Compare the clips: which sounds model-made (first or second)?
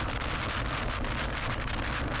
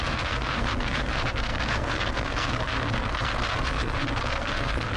second